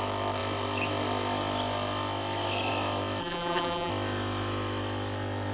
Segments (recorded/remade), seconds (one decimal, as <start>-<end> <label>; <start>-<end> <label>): 0.0-3.2 recorded; 3.2-3.9 remade; 3.9-5.5 recorded